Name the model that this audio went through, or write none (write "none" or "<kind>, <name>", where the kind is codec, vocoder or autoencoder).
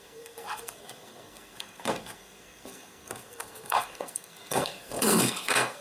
codec, SNAC